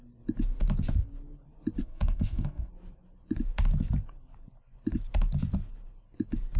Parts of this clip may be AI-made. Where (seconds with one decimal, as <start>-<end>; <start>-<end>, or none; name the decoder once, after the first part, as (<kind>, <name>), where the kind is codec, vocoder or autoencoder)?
1.8-2.7 (codec, SNAC)